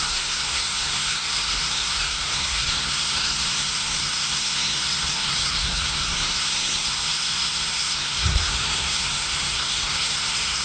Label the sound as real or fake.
fake